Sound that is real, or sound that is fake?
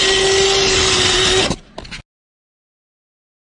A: real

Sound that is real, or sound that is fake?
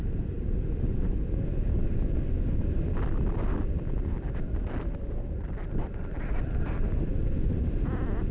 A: real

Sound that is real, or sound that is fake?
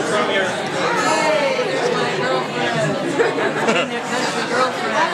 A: real